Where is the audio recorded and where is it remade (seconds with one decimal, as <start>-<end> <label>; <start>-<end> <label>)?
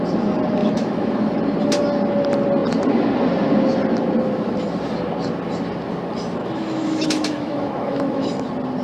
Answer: 0.0-0.6 recorded; 0.6-1.4 remade; 1.4-6.4 recorded; 6.4-8.3 remade; 8.3-8.8 recorded